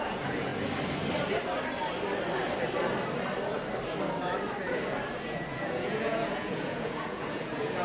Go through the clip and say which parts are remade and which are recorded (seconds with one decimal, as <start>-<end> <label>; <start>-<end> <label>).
0.0-0.5 remade; 0.5-5.2 recorded; 5.2-7.8 remade

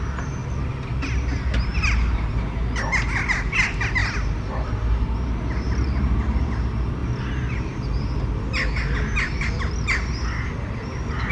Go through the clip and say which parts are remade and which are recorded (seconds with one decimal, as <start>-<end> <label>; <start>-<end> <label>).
0.0-11.3 recorded